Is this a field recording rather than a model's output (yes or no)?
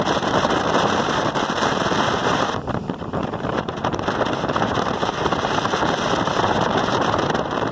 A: no